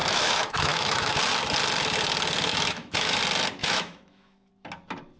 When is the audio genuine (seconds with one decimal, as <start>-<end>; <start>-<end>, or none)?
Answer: 1.2-2.5; 3.2-3.6; 4.5-5.2

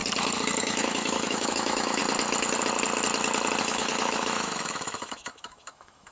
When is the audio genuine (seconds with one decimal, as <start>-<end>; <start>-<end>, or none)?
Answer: 0.0-0.6; 2.0-3.6

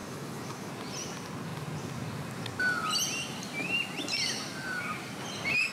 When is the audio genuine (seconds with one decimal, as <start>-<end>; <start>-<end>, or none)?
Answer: 0.7-5.7